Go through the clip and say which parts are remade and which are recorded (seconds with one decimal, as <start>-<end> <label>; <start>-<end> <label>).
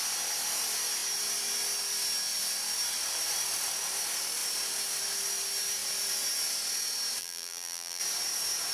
0.0-7.2 recorded; 7.2-8.0 remade; 8.0-8.7 recorded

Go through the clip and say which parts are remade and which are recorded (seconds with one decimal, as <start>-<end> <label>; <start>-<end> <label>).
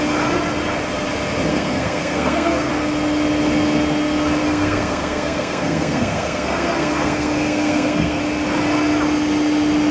0.0-1.5 recorded; 1.5-2.7 remade; 2.7-4.4 recorded; 4.4-8.2 remade; 8.2-9.9 recorded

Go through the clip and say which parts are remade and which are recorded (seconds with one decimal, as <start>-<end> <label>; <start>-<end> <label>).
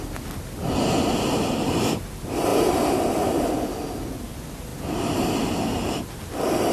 0.0-6.7 recorded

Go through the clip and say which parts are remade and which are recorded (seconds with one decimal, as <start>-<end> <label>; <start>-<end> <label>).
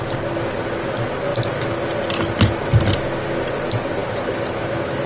0.0-5.1 recorded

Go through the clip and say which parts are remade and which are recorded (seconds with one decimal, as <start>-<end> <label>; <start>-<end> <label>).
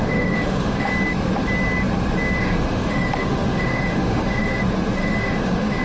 0.0-0.9 remade; 0.9-2.4 recorded; 2.4-4.6 remade; 4.6-5.0 recorded; 5.0-5.8 remade